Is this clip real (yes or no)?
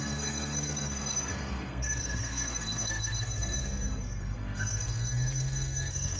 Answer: no